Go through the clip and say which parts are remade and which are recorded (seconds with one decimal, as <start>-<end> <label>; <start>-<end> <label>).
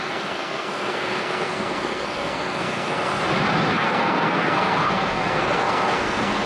0.0-3.1 remade; 3.1-3.7 recorded; 3.7-6.5 remade